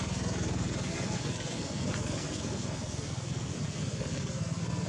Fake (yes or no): yes